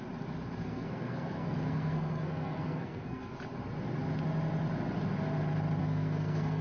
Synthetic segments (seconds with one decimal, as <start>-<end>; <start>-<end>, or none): 0.6-3.3; 5.8-6.6